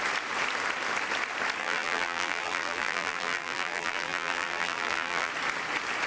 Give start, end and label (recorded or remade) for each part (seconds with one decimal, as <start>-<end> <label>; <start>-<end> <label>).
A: 0.0-1.6 recorded; 1.6-5.3 remade; 5.3-6.1 recorded